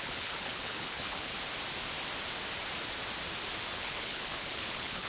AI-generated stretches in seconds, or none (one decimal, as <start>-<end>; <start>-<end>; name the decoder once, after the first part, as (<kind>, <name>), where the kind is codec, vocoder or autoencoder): 0.0-1.3 (codec, HILCodec); 3.7-5.1